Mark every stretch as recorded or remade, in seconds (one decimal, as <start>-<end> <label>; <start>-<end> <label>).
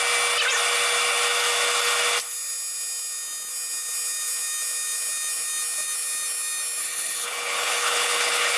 0.0-6.8 recorded; 6.8-8.6 remade